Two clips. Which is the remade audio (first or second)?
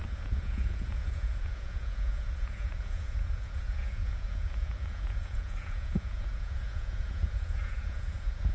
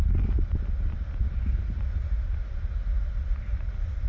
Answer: first